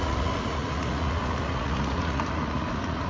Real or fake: fake